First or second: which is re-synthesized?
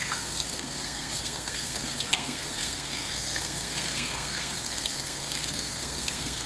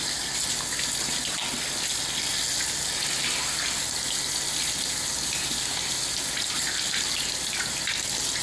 first